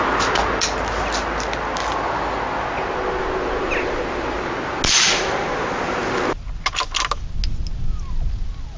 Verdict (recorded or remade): recorded